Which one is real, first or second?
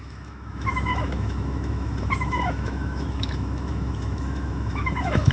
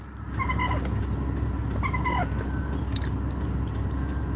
second